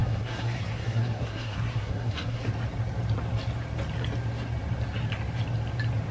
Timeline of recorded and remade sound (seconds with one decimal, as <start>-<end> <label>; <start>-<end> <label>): 0.0-2.4 remade; 2.4-6.1 recorded